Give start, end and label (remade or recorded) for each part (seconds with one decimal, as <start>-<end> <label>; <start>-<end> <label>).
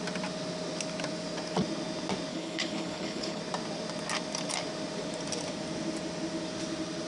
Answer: 0.0-2.3 recorded; 2.3-3.4 remade; 3.4-7.1 recorded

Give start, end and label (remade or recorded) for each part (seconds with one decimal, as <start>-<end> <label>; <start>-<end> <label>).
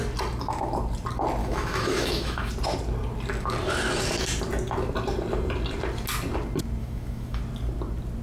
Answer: 0.0-1.4 recorded; 1.4-2.5 remade; 2.5-6.8 recorded; 6.8-7.4 remade; 7.4-8.2 recorded